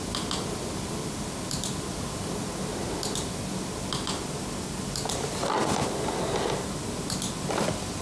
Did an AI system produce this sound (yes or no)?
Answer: no